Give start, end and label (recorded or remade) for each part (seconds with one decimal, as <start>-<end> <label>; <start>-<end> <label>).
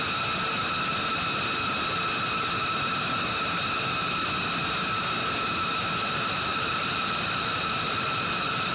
0.0-6.5 recorded; 6.5-8.7 remade